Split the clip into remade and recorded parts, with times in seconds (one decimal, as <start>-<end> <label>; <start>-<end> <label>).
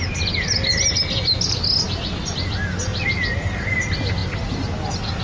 0.0-5.2 recorded